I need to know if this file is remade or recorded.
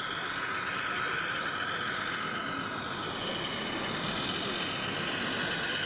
recorded